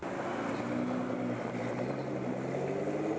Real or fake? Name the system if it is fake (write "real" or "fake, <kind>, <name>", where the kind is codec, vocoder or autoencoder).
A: real